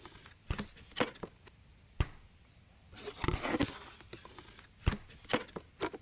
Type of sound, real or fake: real